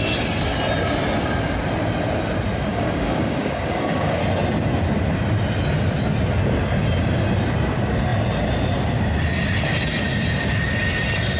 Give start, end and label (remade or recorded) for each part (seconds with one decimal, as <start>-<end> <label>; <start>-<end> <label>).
0.0-2.7 recorded; 2.7-4.2 remade; 4.2-11.4 recorded